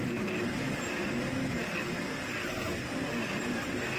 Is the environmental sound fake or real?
fake